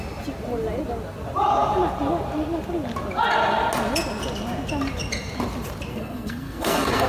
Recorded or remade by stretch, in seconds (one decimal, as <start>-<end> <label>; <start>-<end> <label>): 0.0-5.9 recorded; 5.9-7.1 remade

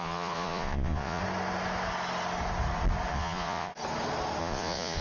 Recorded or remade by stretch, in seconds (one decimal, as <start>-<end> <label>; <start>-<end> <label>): 0.0-1.2 remade; 1.2-3.1 recorded; 3.1-3.7 remade; 3.7-4.4 recorded; 4.4-5.0 remade

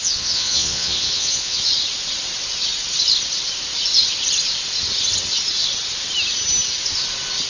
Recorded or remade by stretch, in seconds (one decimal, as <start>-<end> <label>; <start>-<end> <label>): 0.0-1.6 remade; 1.6-7.5 recorded

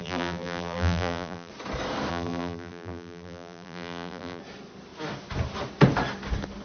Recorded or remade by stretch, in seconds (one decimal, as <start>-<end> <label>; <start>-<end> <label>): 0.0-1.5 remade; 1.5-2.1 recorded; 2.1-4.4 remade; 4.4-6.6 recorded

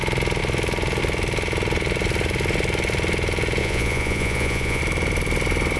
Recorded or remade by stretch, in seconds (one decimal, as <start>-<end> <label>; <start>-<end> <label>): 0.0-3.6 recorded; 3.6-4.8 remade; 4.8-5.8 recorded